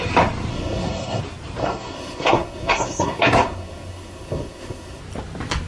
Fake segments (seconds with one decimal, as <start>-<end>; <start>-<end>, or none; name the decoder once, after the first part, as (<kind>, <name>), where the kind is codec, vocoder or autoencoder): 0.5-1.2 (codec, SNAC); 1.6-5.0